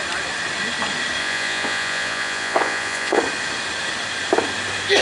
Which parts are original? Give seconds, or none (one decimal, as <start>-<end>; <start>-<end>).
0.0-1.2; 3.2-5.0